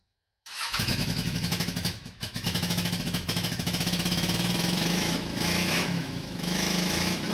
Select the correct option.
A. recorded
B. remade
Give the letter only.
B